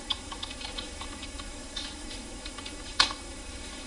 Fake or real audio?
fake